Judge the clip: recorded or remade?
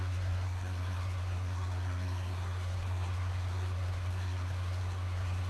remade